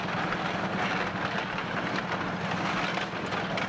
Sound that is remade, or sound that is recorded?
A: recorded